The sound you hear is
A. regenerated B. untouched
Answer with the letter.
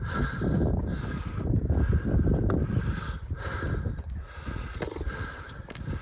A